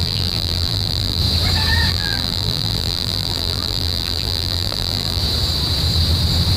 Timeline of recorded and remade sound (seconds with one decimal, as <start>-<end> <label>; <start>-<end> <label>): 0.0-1.2 remade; 1.2-1.9 recorded; 1.9-5.2 remade; 5.2-6.6 recorded